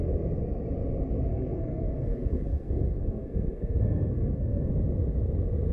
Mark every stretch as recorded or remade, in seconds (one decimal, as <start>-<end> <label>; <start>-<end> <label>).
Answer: 0.0-1.3 recorded; 1.3-4.7 remade; 4.7-5.7 recorded